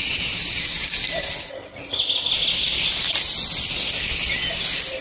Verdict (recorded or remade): recorded